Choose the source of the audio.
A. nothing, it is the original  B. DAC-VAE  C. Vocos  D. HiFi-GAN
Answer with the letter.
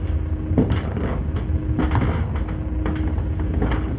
A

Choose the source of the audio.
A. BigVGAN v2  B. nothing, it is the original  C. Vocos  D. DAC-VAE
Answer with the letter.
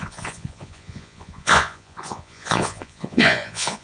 C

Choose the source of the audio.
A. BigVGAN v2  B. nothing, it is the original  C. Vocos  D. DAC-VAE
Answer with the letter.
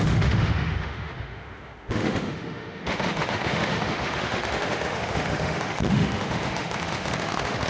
D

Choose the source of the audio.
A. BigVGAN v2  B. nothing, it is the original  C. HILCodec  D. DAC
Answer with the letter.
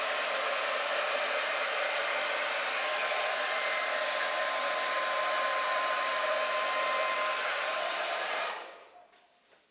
A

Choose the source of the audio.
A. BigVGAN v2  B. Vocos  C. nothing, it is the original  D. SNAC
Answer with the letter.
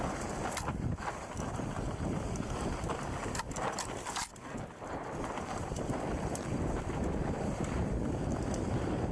C